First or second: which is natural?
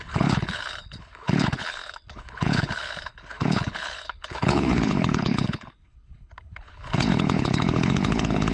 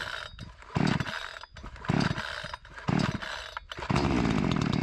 second